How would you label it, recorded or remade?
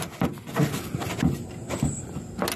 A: recorded